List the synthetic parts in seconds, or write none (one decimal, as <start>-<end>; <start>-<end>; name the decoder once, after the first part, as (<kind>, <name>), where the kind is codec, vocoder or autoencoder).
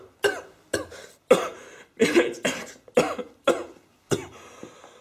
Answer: 3.2-3.9 (vocoder, BigVGAN v2)